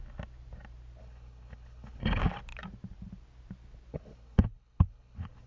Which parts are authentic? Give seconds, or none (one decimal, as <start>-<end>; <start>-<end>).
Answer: 0.0-1.0; 2.0-3.9